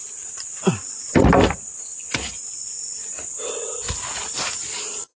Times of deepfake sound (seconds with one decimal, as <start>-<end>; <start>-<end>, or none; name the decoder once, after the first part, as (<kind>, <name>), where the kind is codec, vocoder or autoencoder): none